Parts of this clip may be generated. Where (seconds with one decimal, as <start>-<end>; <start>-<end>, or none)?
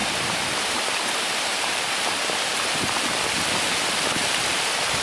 0.0-2.5; 4.5-5.0